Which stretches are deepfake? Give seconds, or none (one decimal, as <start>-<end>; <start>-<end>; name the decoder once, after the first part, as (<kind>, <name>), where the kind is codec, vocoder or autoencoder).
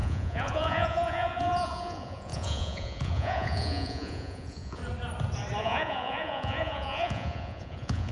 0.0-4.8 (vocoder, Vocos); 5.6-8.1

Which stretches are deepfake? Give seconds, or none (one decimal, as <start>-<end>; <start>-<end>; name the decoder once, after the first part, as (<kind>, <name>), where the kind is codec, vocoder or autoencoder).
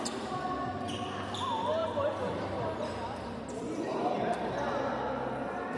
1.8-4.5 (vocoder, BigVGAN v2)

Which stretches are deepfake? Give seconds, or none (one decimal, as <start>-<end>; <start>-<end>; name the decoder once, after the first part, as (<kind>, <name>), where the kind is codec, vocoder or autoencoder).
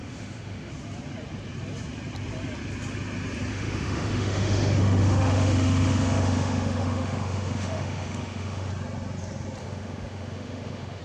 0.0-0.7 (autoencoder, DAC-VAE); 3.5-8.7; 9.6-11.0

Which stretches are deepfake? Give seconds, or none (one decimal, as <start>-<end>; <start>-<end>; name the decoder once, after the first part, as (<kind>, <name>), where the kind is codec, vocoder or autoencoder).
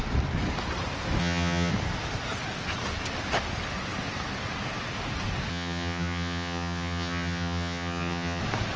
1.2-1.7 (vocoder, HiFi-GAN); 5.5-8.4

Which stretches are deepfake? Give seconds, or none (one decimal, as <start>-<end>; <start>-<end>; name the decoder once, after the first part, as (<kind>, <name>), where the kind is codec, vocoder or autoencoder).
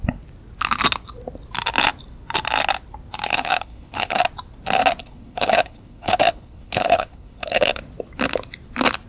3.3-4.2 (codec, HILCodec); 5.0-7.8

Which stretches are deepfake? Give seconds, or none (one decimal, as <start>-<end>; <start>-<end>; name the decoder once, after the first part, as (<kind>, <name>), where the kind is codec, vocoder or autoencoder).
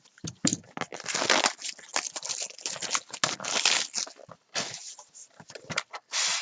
none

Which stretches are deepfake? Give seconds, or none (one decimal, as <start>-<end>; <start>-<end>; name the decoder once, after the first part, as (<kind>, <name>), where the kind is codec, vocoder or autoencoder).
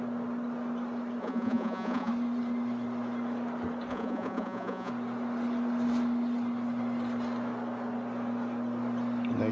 1.2-2.1 (vocoder, Vocos); 3.9-4.9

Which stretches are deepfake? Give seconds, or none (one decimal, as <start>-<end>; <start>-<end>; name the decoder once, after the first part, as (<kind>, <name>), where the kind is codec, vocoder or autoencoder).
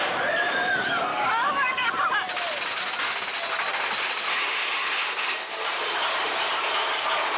1.1-1.9 (codec, DAC)